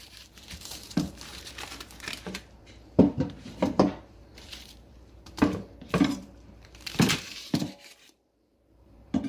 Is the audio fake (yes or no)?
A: yes